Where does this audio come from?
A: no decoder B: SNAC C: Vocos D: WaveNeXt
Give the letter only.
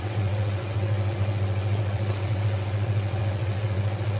D